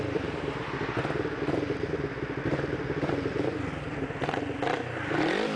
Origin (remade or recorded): recorded